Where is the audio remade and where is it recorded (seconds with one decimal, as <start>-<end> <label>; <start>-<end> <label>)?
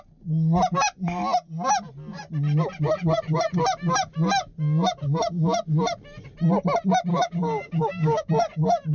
0.0-7.1 recorded; 7.1-8.3 remade; 8.3-8.9 recorded